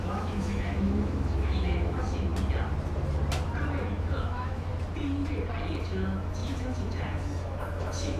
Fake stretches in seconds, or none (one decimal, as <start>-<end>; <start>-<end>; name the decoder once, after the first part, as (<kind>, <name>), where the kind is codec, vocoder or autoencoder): 0.0-2.3 (autoencoder, DAC-VAE); 4.0-4.7; 5.8-8.2